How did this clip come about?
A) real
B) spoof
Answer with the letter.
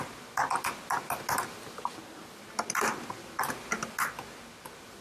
A